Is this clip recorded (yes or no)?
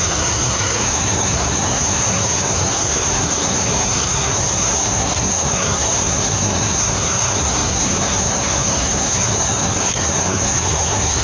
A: no